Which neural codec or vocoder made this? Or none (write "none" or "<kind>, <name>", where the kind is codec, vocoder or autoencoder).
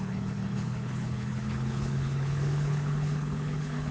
codec, HILCodec